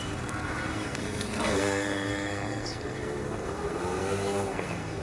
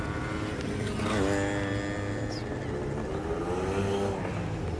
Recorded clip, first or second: second